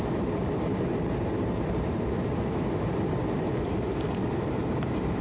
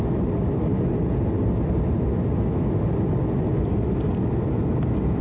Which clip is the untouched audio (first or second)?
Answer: second